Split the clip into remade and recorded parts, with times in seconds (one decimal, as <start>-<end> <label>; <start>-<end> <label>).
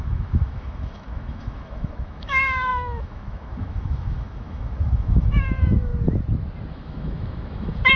0.0-5.9 remade; 5.9-6.7 recorded; 6.7-8.0 remade